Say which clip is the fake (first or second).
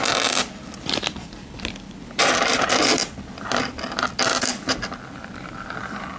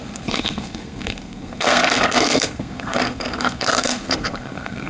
second